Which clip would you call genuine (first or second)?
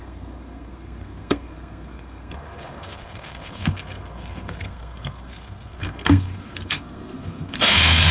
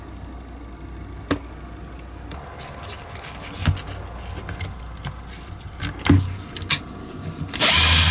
second